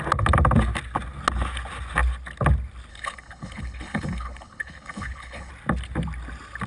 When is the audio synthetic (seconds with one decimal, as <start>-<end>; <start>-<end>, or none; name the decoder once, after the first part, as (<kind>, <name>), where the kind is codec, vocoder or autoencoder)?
2.9-5.5 (codec, HILCodec)

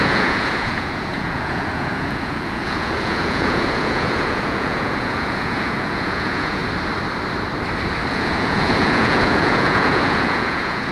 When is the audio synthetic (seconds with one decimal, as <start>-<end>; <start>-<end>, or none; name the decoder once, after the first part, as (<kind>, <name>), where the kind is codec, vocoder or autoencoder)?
0.0-6.6 (vocoder, Vocos); 8.1-10.9

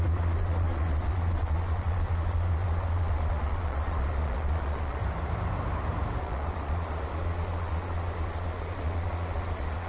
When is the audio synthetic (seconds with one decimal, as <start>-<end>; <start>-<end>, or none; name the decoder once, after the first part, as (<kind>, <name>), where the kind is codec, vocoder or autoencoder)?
0.0-5.0 (vocoder, Vocos); 6.2-9.9